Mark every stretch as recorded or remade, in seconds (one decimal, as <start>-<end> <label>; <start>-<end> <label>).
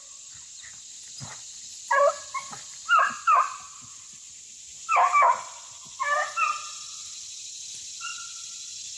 0.0-1.3 recorded; 1.3-5.6 remade; 5.6-8.1 recorded; 8.1-9.0 remade